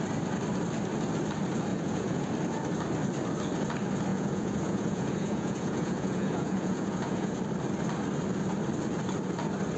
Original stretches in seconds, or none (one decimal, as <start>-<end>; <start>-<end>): 0.0-1.7; 2.3-4.1; 7.4-9.8